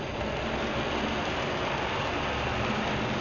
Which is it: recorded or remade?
remade